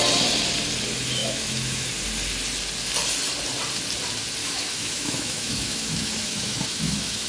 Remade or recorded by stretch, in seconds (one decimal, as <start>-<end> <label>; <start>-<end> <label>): 0.0-1.2 recorded; 1.2-1.9 remade; 1.9-4.4 recorded; 4.4-7.3 remade